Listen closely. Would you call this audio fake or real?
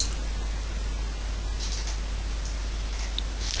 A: real